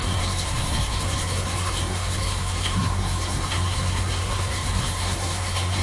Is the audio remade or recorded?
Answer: remade